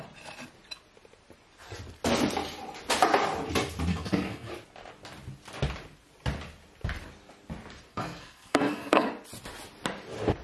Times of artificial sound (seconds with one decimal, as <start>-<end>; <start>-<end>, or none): 3.9-4.5; 7.9-9.1